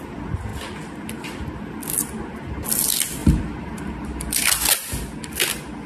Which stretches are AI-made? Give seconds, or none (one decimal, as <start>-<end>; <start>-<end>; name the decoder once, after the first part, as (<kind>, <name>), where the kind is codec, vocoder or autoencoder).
3.2-4.7 (vocoder, BigVGAN v2)